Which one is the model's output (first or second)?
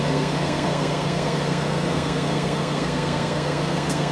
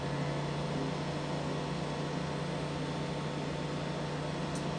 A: first